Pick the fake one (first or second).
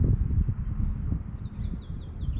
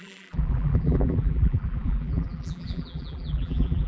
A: second